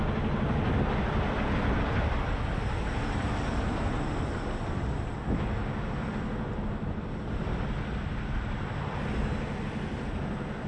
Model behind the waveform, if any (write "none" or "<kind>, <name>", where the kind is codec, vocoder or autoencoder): none